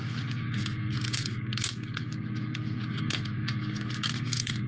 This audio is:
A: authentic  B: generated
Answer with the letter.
B